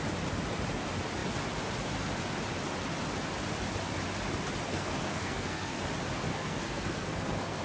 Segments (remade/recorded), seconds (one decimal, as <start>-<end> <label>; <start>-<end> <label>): 0.0-4.7 recorded; 4.7-5.8 remade; 5.8-6.3 recorded; 6.3-7.6 remade